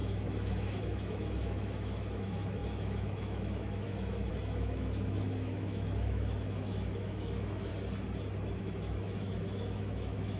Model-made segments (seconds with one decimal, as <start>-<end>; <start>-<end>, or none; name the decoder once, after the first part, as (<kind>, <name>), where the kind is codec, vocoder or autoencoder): 0.0-7.7 (autoencoder, DAC-VAE); 8.6-10.4